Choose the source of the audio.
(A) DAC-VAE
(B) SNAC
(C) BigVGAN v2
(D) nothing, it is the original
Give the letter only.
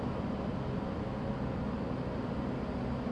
D